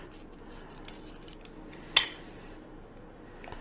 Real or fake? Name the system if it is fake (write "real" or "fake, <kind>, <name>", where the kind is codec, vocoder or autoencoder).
real